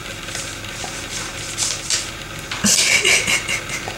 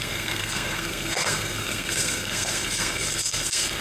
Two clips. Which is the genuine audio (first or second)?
first